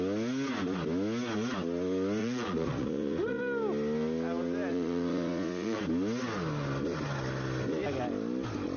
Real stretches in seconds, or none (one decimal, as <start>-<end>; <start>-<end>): 0.0-2.2; 3.4-4.7; 5.8-8.8